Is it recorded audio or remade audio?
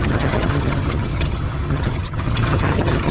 remade